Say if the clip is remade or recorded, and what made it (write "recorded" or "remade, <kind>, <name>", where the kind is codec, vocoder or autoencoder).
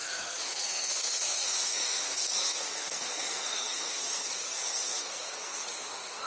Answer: remade, codec, SNAC